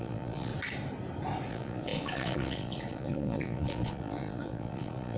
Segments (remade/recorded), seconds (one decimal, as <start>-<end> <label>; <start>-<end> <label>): 0.0-0.5 remade; 0.5-1.5 recorded; 1.5-5.2 remade